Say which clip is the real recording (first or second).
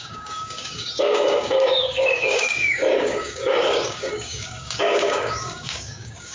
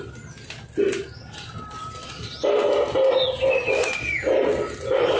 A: second